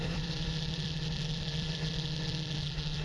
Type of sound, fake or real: fake